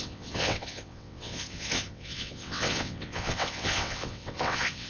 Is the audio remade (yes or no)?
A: yes